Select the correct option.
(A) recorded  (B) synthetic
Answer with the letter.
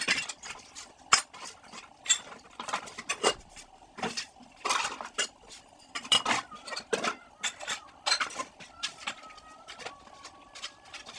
A